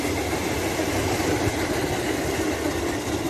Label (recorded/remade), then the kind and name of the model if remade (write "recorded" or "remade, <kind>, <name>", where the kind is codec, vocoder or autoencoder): recorded